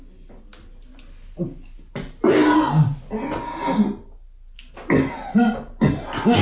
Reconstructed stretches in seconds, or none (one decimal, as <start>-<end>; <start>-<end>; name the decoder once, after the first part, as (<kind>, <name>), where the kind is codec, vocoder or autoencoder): none